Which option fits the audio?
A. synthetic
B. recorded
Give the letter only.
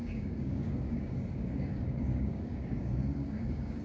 A